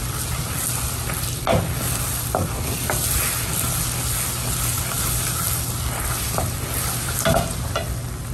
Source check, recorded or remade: recorded